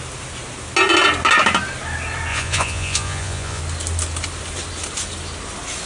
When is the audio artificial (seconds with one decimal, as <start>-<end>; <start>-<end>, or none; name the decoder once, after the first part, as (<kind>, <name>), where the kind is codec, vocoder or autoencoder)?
2.3-3.6 (vocoder, Vocos)